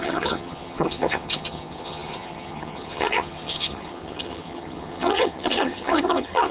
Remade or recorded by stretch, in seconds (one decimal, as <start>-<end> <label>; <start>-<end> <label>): 0.0-6.5 remade